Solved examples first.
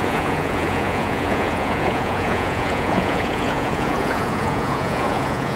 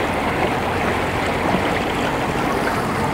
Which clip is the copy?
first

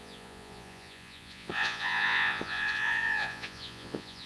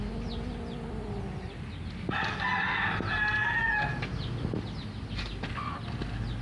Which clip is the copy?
first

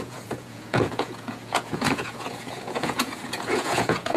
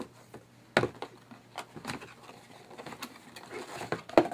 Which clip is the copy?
first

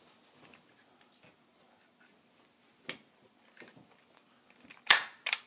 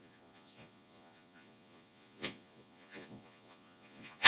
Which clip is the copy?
second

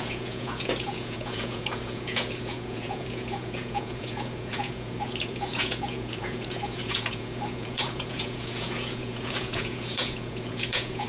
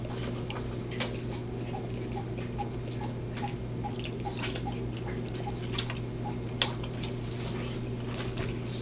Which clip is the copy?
first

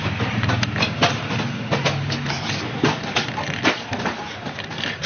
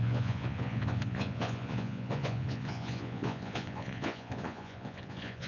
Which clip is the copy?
second